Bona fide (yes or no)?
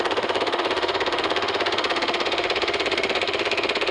no